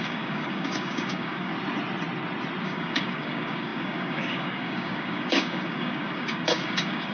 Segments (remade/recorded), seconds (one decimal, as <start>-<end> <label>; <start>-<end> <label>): 0.0-1.5 remade; 1.5-2.6 recorded; 2.6-7.1 remade

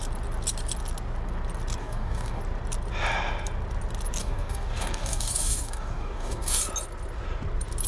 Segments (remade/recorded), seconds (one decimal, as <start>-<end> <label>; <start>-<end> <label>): 0.0-1.8 recorded; 1.8-2.4 remade; 2.4-4.2 recorded; 4.2-6.6 remade; 6.6-7.9 recorded

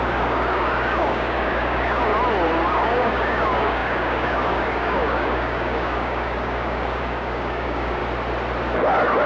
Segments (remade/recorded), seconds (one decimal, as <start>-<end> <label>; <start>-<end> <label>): 0.0-2.1 remade; 2.1-2.7 recorded; 2.7-8.0 remade; 8.0-9.3 recorded

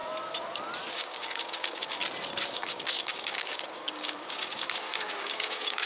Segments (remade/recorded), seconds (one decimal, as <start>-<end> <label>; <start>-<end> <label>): 0.0-0.9 recorded; 0.9-2.0 remade; 2.0-2.5 recorded; 2.5-5.9 remade

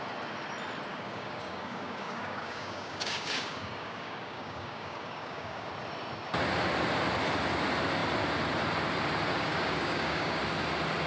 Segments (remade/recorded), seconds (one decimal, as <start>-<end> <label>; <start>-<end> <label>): 0.0-0.9 recorded; 0.9-5.7 remade; 5.7-9.3 recorded; 9.3-10.4 remade; 10.4-11.1 recorded

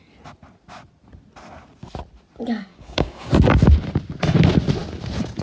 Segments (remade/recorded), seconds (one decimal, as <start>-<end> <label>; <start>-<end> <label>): 0.0-2.7 recorded; 2.7-3.3 remade; 3.3-5.4 recorded

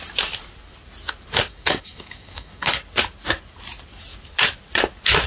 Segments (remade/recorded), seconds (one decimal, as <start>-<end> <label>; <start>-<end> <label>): 0.0-1.5 recorded; 1.5-2.8 remade; 2.8-5.3 recorded